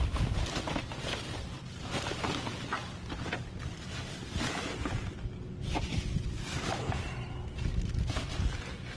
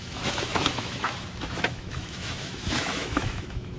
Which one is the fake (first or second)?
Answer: second